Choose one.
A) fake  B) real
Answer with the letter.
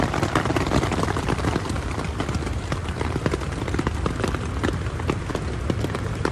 A